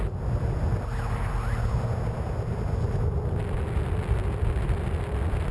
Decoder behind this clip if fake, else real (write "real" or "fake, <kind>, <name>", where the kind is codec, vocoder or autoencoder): real